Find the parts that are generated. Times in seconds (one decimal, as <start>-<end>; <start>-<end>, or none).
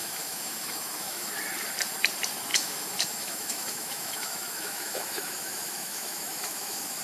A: 0.0-1.3; 2.5-7.0